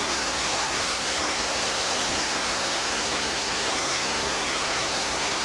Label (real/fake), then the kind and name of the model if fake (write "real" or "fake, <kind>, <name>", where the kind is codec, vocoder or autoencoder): fake, codec, SNAC